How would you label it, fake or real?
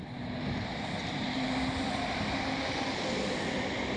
real